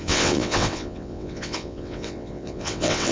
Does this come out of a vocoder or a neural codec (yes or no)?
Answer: yes